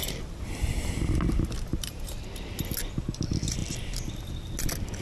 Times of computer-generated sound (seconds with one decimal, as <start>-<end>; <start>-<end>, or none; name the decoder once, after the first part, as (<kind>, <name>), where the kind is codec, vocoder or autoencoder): 0.0-0.9 (vocoder, BigVGAN v2); 1.7-2.2